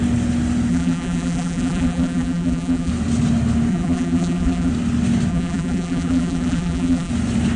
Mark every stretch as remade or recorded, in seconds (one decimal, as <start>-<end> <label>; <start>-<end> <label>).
0.0-0.7 recorded; 0.7-2.9 remade; 2.9-3.7 recorded; 3.7-4.7 remade; 4.7-5.3 recorded; 5.3-7.1 remade; 7.1-7.6 recorded